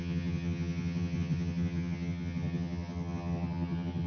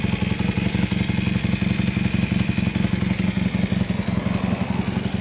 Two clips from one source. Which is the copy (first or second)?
first